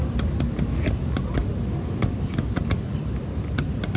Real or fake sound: real